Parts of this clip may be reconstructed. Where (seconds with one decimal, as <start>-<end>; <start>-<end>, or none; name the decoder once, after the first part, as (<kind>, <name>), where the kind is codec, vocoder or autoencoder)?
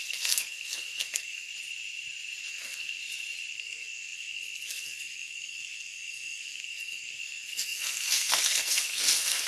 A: 0.0-1.5 (codec, SNAC); 2.5-3.0; 3.5-9.5